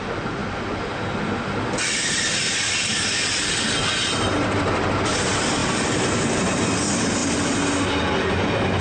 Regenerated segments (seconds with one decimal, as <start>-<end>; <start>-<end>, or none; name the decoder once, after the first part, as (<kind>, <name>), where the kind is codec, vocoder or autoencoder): none